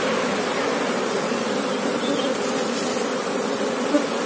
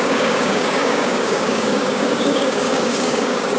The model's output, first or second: second